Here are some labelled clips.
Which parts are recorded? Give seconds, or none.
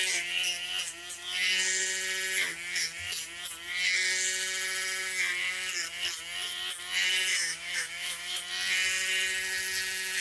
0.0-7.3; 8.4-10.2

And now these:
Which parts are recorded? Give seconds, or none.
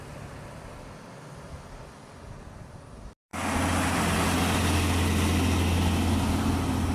0.0-6.9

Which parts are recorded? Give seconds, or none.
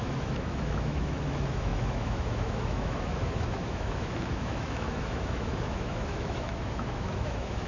none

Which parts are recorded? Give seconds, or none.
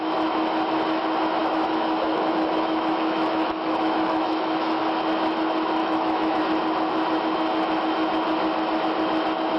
0.0-1.4; 4.8-5.8; 6.4-9.6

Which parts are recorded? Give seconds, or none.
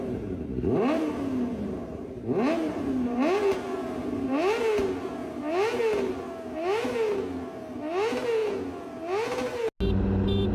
0.0-10.5